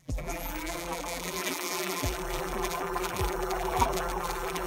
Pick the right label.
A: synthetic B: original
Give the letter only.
A